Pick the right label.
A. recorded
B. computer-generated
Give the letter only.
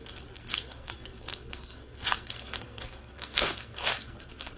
B